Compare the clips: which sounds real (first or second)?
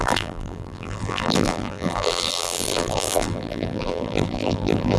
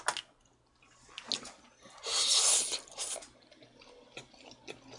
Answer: second